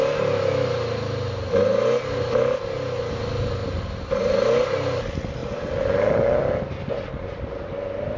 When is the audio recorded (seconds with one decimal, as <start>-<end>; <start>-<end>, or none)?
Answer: 0.0-8.2